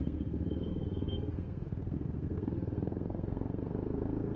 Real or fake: fake